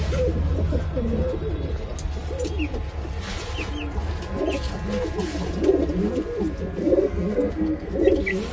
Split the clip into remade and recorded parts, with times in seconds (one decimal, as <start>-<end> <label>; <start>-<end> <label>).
0.0-6.8 recorded; 6.8-7.9 remade; 7.9-8.5 recorded